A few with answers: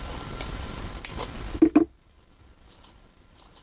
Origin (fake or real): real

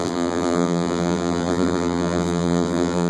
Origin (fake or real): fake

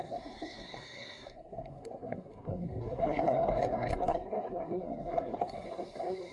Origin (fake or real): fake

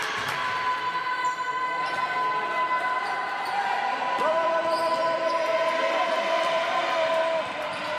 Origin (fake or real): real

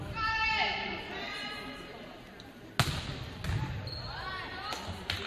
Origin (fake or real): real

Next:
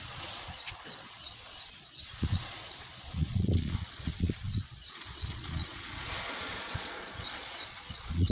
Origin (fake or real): fake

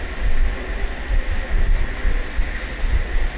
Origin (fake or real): real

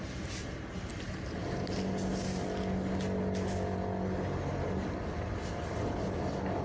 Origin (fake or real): real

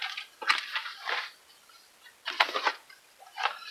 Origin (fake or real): real